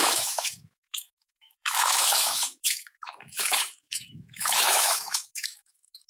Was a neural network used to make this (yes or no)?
yes